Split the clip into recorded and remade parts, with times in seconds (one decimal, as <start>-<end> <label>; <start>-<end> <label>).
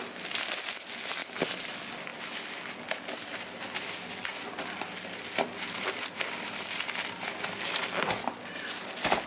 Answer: 0.0-9.3 recorded